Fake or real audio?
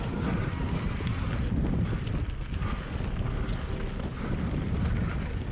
real